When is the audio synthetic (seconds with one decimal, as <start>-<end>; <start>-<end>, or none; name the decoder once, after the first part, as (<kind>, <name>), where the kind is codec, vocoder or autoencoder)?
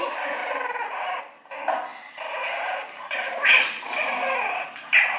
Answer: none